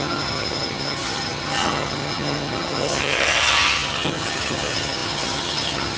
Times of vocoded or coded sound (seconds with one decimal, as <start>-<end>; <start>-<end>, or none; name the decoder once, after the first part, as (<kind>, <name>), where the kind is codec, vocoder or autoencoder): 0.0-6.0 (vocoder, HiFi-GAN)